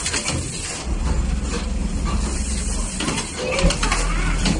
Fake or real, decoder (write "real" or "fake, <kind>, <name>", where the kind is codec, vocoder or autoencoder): real